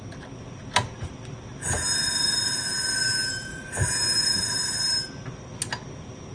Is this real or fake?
real